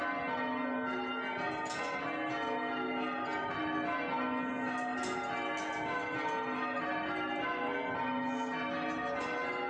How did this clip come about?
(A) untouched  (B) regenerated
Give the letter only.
A